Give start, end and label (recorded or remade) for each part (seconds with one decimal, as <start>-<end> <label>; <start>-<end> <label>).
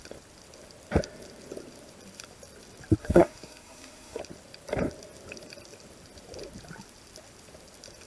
0.0-3.0 recorded; 3.0-4.2 remade; 4.2-8.1 recorded